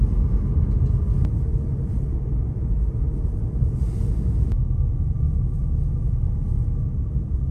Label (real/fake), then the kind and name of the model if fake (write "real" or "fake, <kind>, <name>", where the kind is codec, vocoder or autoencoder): real